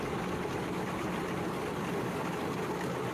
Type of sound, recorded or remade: recorded